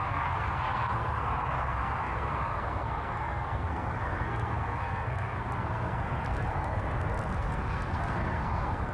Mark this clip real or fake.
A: fake